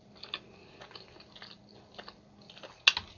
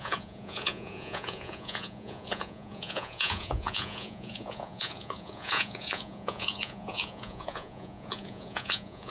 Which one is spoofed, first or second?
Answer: second